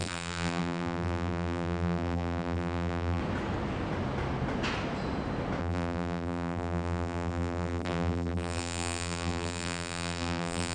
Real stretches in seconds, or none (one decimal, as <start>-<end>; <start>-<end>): 3.2-5.6